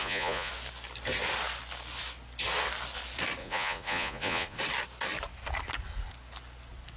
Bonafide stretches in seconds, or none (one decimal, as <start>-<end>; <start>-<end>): 0.5-3.4; 4.6-7.0